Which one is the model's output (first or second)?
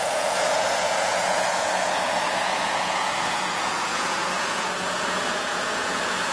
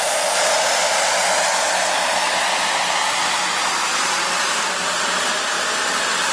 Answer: first